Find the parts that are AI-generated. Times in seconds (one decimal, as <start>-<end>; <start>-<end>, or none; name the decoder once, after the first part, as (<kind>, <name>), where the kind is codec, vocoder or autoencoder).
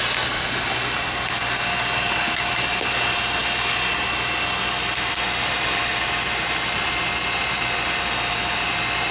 none